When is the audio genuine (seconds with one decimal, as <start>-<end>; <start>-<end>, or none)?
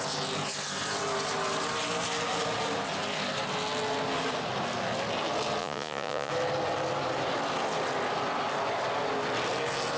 0.0-5.6; 6.3-10.0